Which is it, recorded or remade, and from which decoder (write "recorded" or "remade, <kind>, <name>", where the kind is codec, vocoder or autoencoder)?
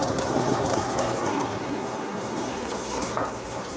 remade, codec, SNAC